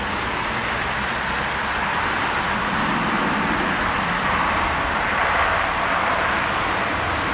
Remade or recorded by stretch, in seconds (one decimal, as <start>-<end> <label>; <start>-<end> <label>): 0.0-7.3 recorded